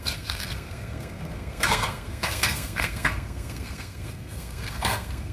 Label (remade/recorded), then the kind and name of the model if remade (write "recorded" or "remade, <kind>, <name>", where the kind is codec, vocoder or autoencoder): remade, codec, SNAC